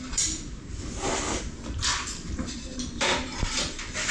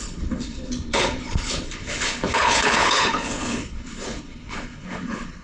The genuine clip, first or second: first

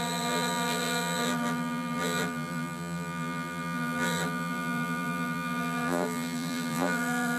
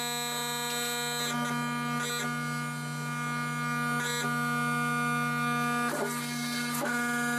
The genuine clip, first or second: second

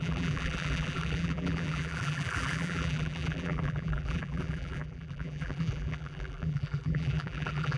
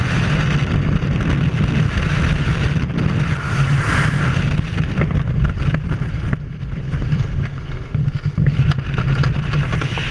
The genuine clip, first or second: second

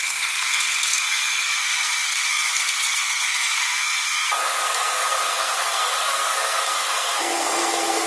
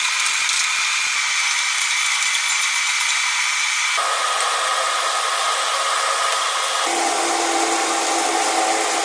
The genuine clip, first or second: second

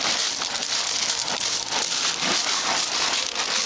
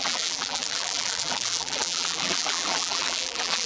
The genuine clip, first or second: first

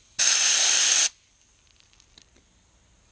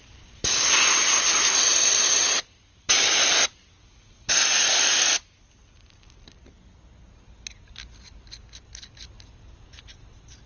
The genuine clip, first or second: second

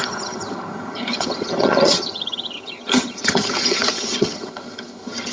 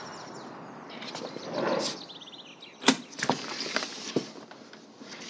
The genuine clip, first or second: second